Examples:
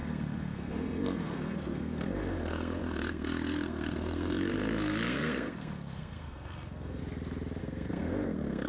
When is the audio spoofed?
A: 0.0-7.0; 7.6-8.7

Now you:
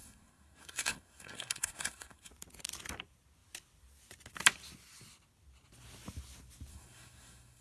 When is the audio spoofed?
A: 0.0-2.3; 6.7-7.6

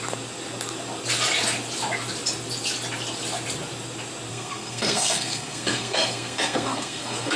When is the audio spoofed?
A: 4.3-7.4

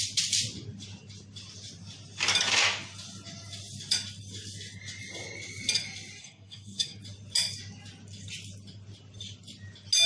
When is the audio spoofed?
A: 6.2-7.0

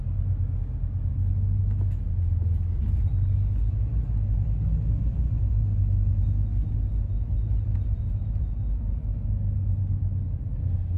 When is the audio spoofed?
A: none

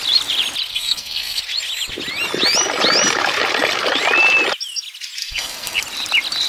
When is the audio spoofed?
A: 0.7-1.4; 5.2-5.8

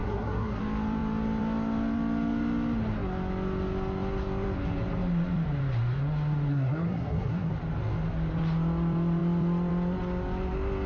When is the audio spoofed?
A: 0.0-0.6; 6.5-7.5

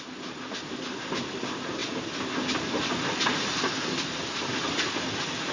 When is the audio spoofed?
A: none